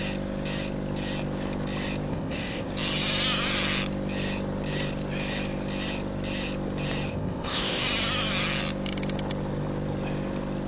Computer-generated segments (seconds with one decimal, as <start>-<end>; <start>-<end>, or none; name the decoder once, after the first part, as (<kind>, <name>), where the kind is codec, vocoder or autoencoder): 2.1-2.7 (codec, ZipCodec); 7.1-7.8